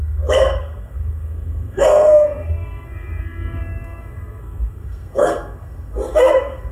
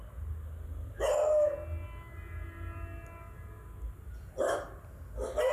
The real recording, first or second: second